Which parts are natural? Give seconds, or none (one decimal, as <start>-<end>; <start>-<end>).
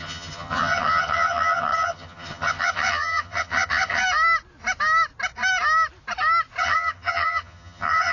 4.0-6.6